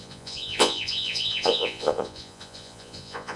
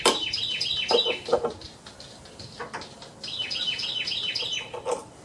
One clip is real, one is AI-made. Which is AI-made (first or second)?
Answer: first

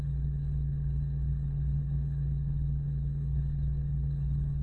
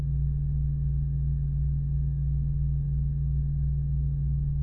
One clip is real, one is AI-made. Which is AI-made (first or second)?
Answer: first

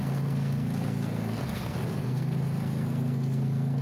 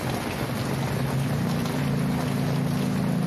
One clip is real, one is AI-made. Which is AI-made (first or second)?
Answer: first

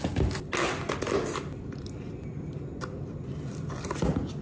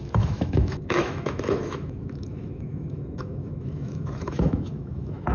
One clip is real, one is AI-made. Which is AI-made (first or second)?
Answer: second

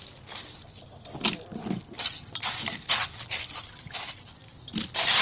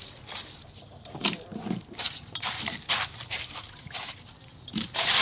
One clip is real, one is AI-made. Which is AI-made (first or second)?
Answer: second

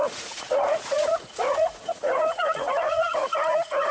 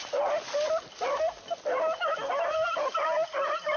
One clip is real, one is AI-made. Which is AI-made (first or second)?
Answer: first